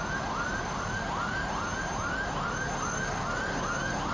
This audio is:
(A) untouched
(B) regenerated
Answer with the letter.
A